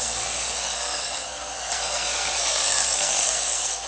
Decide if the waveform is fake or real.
fake